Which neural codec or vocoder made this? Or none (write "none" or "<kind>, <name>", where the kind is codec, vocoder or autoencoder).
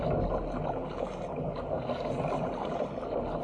none